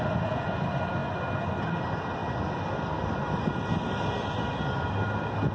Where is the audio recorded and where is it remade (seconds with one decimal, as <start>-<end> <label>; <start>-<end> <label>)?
0.0-5.5 recorded